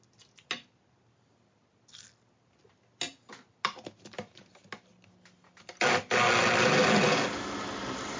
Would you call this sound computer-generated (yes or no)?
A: no